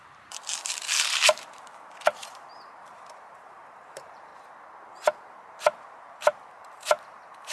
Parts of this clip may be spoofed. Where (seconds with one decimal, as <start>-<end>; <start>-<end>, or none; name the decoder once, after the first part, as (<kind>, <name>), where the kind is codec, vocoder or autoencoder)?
0.0-4.3 (vocoder, BigVGAN v2); 5.3-7.5